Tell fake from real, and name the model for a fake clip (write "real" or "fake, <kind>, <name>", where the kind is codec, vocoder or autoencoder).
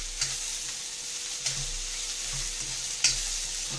real